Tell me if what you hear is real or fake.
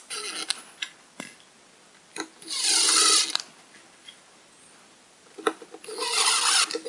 real